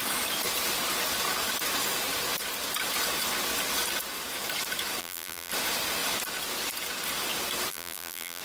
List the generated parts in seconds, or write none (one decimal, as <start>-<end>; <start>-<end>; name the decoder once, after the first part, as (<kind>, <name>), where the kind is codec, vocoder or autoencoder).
5.0-5.5 (vocoder, BigVGAN v2); 7.7-8.4